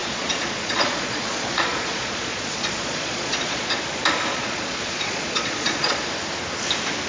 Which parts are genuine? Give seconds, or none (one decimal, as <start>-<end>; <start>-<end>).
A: 3.8-4.3; 6.0-7.1